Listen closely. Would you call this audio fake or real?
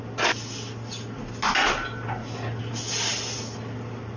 real